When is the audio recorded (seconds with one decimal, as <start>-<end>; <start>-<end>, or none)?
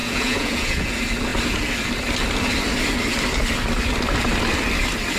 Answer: 0.9-5.2